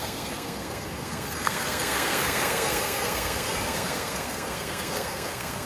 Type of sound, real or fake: fake